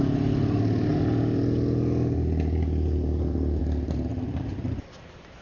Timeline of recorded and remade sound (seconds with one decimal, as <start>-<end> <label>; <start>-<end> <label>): 0.0-4.1 recorded; 4.1-5.4 remade